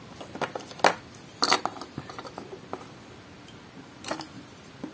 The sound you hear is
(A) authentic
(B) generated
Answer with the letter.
A